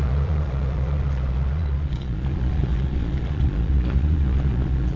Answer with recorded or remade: remade